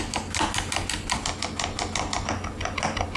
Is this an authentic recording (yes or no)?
yes